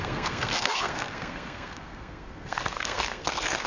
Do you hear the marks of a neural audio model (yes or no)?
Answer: yes